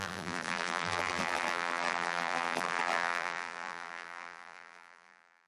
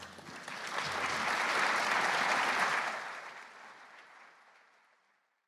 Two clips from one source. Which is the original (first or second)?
second